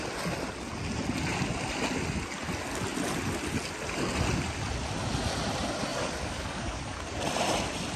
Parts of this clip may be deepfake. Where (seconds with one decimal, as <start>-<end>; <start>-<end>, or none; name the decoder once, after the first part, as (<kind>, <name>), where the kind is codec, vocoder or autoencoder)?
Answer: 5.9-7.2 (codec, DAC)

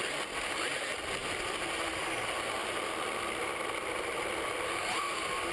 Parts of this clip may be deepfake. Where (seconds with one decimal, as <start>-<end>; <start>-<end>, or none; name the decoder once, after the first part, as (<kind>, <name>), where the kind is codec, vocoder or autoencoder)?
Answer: none

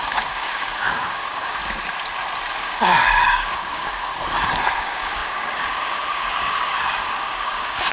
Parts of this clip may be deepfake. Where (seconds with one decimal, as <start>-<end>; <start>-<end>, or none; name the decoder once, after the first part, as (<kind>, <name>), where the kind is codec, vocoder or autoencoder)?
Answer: 0.0-1.6 (codec, DAC); 2.6-4.1; 4.8-7.9